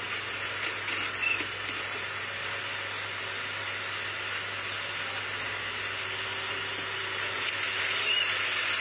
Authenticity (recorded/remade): recorded